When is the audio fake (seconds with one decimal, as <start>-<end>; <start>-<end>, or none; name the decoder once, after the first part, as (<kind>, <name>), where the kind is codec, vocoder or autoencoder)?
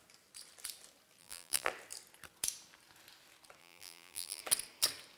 1.2-1.7 (vocoder, BigVGAN v2); 3.6-4.4